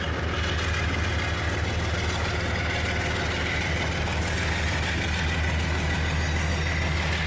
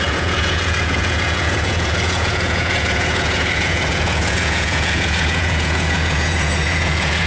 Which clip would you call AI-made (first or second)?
second